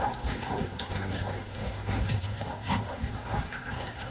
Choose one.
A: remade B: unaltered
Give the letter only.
A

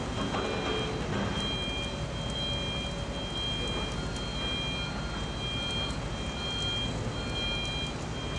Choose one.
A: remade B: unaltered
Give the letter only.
B